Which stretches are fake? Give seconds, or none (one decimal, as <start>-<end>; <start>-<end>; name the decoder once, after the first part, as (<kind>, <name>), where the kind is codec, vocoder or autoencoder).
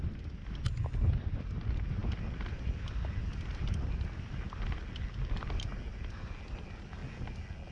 none